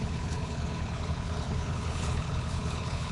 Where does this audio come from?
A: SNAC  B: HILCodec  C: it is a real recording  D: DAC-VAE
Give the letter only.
B